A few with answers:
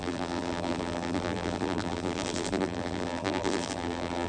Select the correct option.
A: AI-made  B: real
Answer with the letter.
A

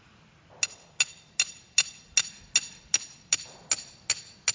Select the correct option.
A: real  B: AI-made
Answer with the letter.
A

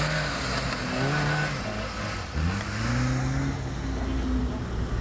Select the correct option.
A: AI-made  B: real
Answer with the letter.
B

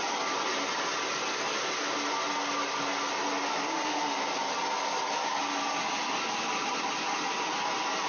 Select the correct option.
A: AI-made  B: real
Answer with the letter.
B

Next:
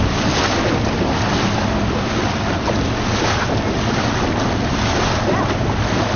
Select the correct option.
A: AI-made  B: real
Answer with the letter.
B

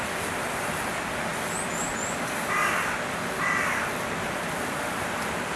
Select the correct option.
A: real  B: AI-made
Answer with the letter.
A